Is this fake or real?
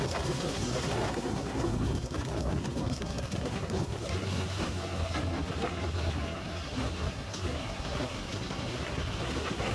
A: fake